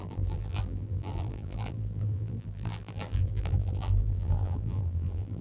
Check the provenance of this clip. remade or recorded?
remade